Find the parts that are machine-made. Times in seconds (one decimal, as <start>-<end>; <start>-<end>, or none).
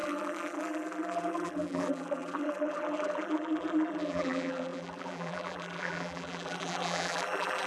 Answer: 0.0-7.7